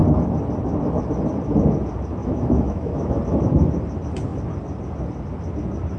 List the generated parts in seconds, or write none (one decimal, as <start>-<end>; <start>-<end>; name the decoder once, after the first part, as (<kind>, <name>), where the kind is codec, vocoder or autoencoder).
2.2-3.2 (autoencoder, DAC-VAE)

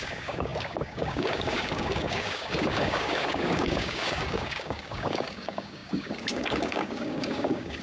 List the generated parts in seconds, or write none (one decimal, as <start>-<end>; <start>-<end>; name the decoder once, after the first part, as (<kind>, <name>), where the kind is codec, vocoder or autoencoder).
0.0-7.8 (codec, DAC)

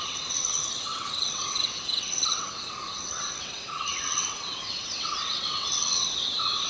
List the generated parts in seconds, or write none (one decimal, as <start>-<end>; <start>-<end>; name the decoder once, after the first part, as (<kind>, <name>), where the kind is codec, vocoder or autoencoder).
0.0-6.7 (vocoder, WaveNeXt)

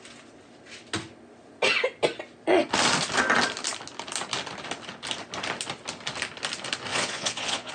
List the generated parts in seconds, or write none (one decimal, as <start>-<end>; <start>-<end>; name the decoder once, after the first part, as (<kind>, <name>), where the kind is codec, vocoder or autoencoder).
6.9-7.7 (vocoder, Vocos)

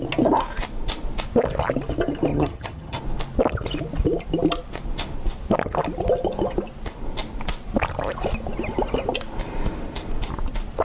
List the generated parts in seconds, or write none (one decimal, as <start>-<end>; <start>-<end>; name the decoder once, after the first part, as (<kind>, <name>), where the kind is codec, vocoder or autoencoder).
2.3-3.0 (vocoder, HiFi-GAN)

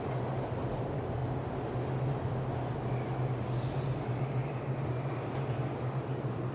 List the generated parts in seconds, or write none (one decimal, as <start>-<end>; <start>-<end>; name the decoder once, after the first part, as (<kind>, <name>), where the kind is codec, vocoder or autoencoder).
0.0-1.2 (vocoder, BigVGAN v2); 4.2-6.5

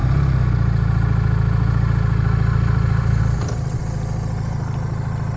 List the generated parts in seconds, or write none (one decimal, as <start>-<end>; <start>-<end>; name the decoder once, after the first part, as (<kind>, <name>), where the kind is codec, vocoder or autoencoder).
none

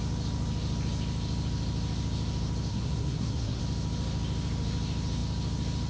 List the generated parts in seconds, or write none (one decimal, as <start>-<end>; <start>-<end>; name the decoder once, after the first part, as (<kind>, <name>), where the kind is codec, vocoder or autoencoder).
2.7-3.6 (codec, SNAC)